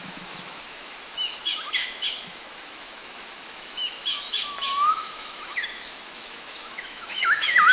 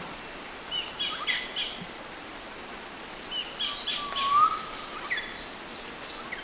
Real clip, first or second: second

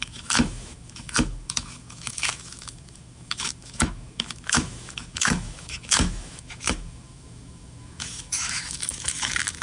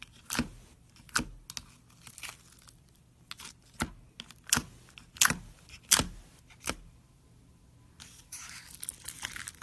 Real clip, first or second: second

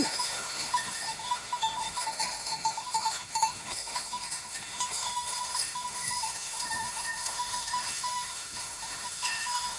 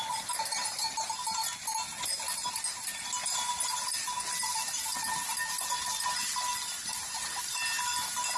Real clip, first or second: second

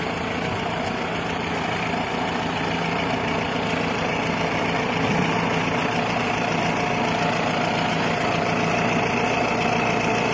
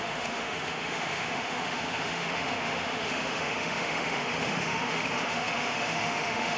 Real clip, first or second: first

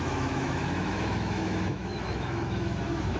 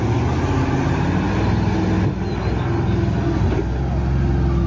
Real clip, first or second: second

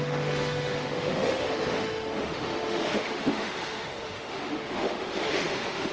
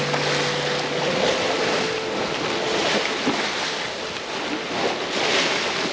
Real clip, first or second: second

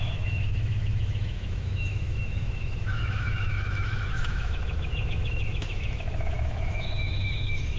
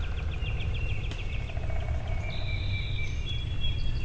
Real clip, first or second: second